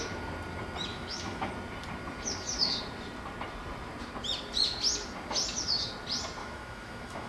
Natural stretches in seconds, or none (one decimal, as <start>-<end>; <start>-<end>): 0.0-0.9; 1.5-6.4